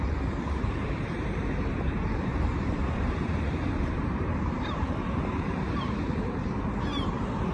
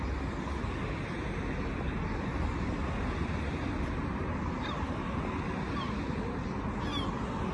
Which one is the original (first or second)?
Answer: second